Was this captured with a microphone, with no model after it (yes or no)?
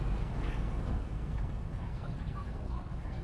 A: no